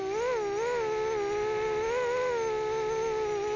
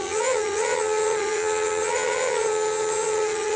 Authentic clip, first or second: first